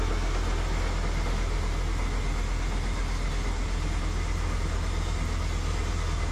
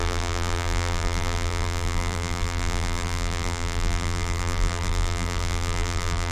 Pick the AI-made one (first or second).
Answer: second